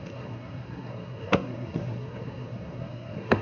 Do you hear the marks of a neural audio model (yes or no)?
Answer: yes